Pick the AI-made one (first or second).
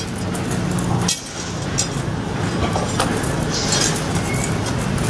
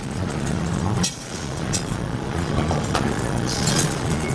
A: second